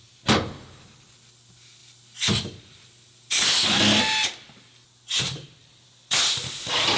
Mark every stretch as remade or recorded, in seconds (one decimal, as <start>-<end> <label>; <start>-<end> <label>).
0.0-1.8 recorded; 1.8-4.0 remade; 4.0-5.6 recorded; 5.6-6.2 remade; 6.2-7.0 recorded